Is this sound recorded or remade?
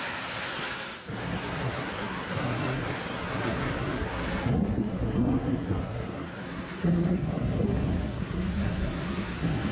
remade